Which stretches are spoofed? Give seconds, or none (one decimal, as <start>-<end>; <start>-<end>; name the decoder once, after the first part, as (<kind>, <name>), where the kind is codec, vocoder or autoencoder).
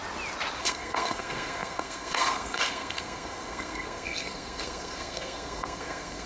0.6-6.3 (codec, SNAC)